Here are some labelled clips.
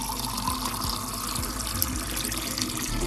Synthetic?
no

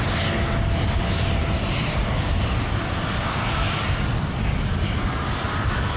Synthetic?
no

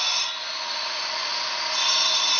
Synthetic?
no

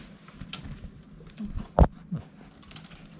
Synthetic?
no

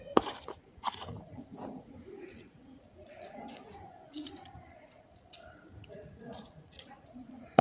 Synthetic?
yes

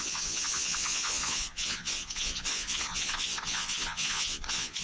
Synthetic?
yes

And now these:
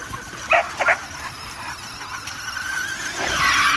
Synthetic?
no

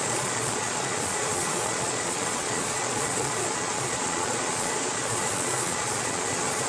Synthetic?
yes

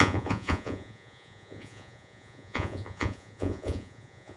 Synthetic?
yes